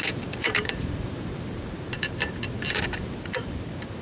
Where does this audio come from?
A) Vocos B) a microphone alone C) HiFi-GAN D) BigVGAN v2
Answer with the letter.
D